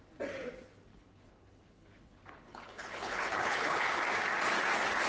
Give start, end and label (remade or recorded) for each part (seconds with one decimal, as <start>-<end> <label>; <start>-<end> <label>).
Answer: 0.0-0.9 recorded; 0.9-4.0 remade; 4.0-5.1 recorded